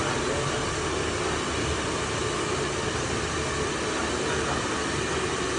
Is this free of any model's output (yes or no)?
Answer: yes